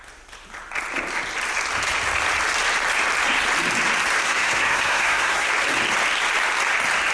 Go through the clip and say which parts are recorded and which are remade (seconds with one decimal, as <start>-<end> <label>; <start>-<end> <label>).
0.0-4.2 recorded; 4.2-5.5 remade; 5.5-7.1 recorded